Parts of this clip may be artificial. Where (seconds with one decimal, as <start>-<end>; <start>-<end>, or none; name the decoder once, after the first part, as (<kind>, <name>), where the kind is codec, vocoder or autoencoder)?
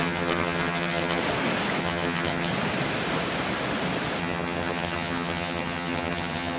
0.0-1.2 (vocoder, HiFi-GAN); 1.8-2.5; 4.2-6.6